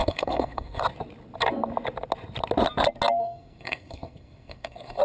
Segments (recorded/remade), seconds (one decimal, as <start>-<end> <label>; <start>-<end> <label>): 0.0-0.8 remade; 0.8-3.2 recorded; 3.2-5.0 remade